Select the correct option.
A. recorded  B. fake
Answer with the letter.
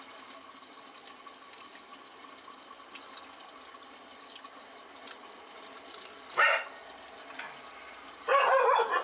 A